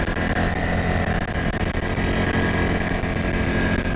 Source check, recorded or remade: recorded